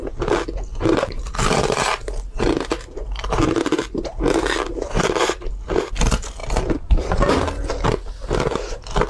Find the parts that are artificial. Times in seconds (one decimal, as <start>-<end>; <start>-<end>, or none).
0.7-5.9